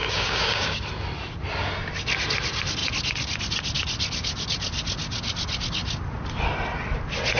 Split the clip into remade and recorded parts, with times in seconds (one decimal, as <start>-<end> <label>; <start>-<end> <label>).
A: 0.0-0.8 remade; 0.8-7.4 recorded